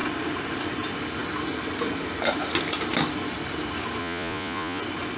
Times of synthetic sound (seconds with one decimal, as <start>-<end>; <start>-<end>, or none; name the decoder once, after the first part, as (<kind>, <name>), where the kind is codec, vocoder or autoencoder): 4.0-4.8 (vocoder, Vocos)